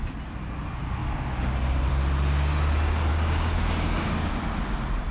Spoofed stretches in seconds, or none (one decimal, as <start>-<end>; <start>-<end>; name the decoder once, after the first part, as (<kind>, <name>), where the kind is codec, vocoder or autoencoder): 3.1-4.3 (codec, DAC)